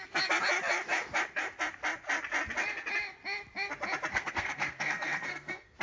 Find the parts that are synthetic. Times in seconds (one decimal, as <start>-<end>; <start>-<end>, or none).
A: 4.1-5.8

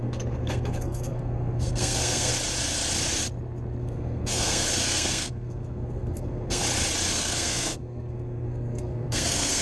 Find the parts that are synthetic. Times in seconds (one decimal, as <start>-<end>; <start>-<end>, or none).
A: 0.0-2.3; 3.8-6.6; 7.1-9.6

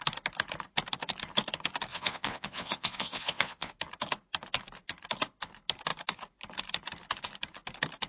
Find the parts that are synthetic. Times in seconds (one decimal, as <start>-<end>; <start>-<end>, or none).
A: 1.9-3.7

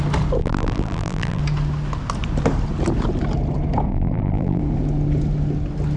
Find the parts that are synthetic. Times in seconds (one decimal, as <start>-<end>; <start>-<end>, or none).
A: 0.4-1.4; 3.9-4.6

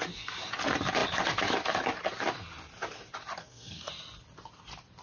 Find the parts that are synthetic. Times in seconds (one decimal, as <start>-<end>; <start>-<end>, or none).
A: 3.4-3.9

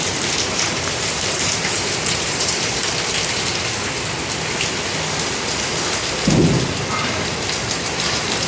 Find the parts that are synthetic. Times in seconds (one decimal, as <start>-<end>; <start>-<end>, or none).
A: 0.0-2.8; 7.0-8.5

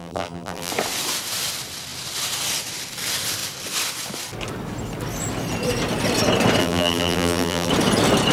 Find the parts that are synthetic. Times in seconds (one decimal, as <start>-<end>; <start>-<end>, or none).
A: 0.0-0.7; 6.6-7.7